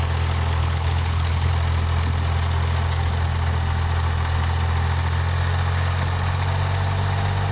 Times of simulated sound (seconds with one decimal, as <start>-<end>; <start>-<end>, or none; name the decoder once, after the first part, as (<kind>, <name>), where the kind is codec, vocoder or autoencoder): 0.6-1.5 (codec, HILCodec)